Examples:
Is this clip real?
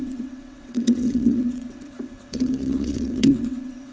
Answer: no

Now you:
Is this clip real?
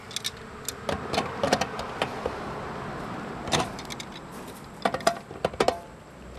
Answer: yes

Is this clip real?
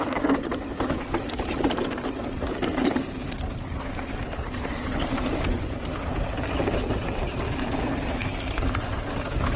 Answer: no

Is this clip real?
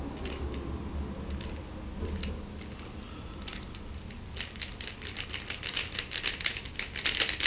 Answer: yes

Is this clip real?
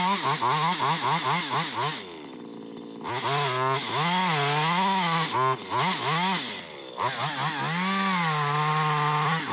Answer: yes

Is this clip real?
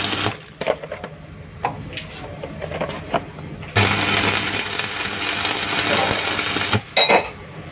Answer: yes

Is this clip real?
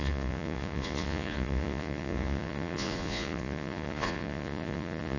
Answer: no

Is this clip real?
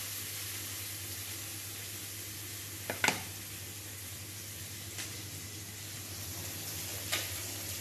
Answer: yes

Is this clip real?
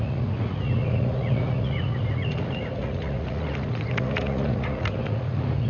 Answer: no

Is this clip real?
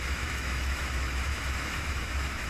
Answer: no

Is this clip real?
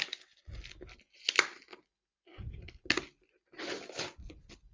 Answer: yes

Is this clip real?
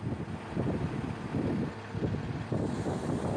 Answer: yes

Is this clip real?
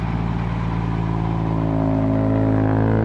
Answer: yes